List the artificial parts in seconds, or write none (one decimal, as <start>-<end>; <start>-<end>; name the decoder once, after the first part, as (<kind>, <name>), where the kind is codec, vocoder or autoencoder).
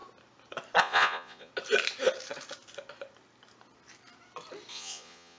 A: 0.8-1.5 (vocoder, Vocos); 4.7-5.4